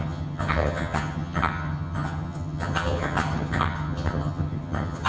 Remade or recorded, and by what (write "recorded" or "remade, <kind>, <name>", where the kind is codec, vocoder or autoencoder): remade, vocoder, HiFi-GAN